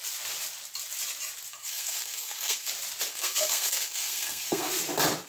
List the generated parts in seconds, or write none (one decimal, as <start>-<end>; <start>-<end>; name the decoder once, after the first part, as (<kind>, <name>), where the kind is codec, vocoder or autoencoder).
1.5-2.7 (codec, SNAC); 3.1-4.7